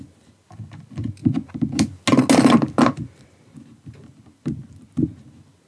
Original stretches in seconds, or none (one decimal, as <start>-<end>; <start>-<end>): 0.0-5.7